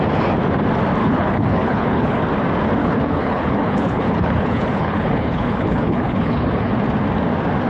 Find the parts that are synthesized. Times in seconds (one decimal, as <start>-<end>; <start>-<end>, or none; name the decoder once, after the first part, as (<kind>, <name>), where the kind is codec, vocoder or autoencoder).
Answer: 1.0-2.2 (codec, HILCodec); 2.8-6.7